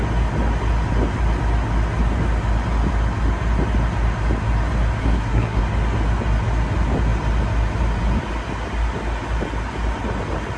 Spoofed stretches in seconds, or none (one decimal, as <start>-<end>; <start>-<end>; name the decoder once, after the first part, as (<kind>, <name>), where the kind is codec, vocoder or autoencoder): 5.0-5.6 (codec, SNAC)